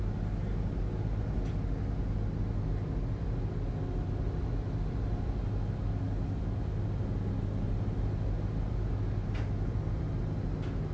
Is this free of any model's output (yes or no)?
yes